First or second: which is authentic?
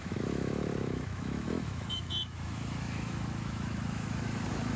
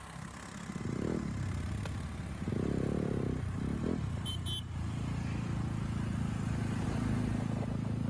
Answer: second